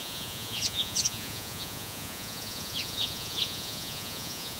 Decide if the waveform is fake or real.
fake